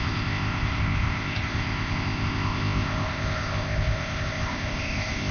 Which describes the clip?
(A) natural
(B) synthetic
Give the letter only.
B